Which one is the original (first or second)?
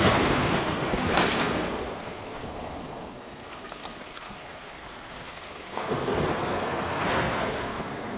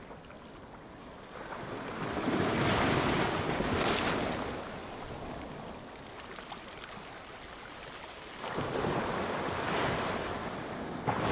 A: second